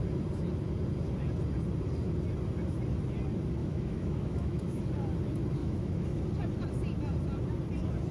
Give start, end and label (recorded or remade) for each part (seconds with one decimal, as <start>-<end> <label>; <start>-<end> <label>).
0.0-3.6 recorded; 3.6-4.8 remade; 4.8-5.6 recorded; 5.6-6.2 remade; 6.2-8.1 recorded